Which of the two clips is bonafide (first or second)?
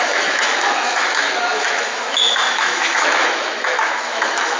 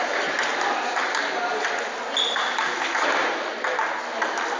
second